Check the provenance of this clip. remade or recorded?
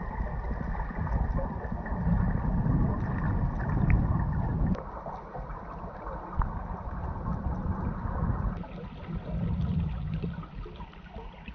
recorded